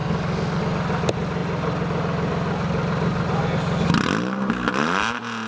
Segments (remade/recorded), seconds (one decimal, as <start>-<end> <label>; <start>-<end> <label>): 0.0-0.6 remade; 0.6-5.5 recorded